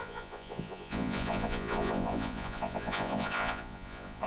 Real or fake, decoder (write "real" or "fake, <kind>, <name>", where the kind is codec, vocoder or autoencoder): fake, vocoder, Vocos